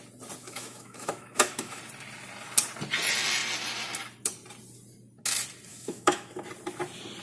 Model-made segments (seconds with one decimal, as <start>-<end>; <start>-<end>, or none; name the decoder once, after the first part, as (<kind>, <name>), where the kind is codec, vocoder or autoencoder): 0.4-1.8 (autoencoder, DAC-VAE); 5.7-6.4